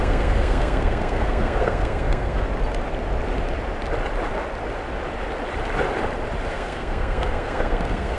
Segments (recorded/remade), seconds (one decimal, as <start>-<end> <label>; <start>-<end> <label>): 0.0-2.5 remade; 2.5-6.5 recorded; 6.5-8.2 remade